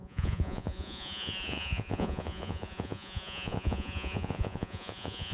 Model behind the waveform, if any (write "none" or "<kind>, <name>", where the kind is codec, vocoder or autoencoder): vocoder, Vocos